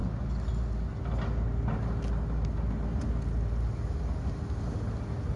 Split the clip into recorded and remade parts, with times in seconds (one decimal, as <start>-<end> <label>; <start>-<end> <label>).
0.0-5.4 recorded